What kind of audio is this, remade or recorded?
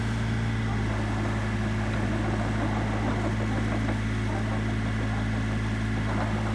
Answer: recorded